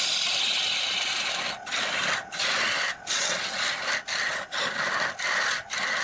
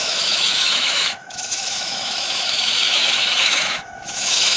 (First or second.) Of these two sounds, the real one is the first